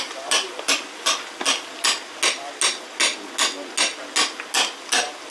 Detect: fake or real real